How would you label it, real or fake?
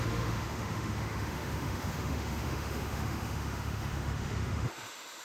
fake